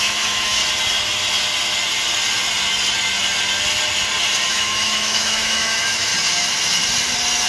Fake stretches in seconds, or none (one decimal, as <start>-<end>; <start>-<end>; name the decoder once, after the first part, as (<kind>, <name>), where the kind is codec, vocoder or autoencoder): 0.0-0.6 (autoencoder, DAC-VAE); 4.5-6.1